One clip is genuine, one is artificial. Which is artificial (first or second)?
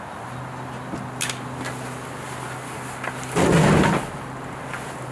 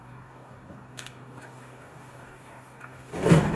second